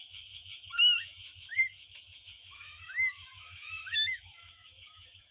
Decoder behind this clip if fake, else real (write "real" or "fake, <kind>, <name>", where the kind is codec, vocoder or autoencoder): fake, autoencoder, DAC-VAE